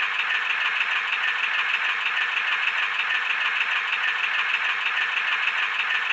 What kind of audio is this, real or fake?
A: real